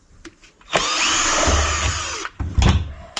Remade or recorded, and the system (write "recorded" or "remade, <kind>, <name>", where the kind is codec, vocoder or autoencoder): recorded